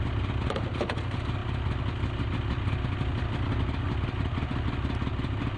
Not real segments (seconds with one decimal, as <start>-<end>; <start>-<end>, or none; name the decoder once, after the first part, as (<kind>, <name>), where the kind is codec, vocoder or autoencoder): none